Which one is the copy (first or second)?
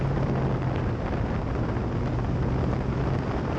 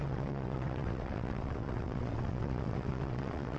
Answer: second